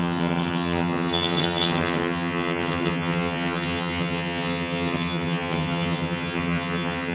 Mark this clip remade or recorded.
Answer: remade